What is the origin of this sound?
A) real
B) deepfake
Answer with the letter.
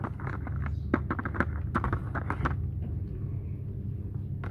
A